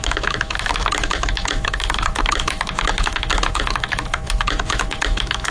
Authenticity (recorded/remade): remade